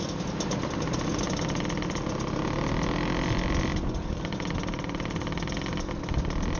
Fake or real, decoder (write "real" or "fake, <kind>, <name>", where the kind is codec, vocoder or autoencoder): real